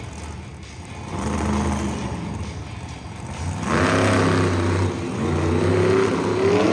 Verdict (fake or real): real